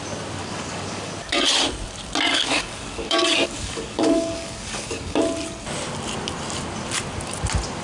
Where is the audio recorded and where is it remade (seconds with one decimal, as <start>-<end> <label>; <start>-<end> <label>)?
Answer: 0.0-0.4 recorded; 0.4-1.1 remade; 1.1-2.3 recorded; 2.3-5.2 remade; 5.2-7.8 recorded